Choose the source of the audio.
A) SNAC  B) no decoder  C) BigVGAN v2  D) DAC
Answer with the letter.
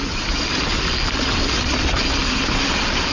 B